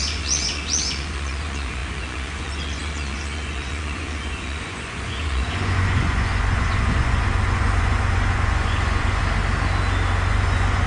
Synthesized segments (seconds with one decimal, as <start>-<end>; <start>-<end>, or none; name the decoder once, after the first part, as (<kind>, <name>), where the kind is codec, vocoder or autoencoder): 0.0-9.2 (vocoder, Vocos); 10.3-10.9